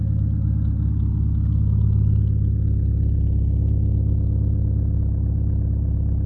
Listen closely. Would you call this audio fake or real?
real